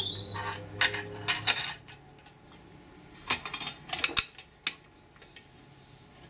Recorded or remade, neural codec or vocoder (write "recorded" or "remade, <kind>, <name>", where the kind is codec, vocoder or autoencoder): recorded